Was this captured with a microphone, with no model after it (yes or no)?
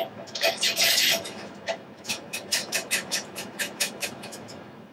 no